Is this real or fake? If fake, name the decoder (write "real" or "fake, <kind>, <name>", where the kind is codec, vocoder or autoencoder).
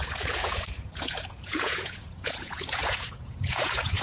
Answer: fake, vocoder, Vocos